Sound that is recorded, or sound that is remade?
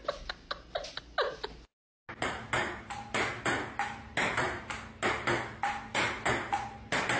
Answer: recorded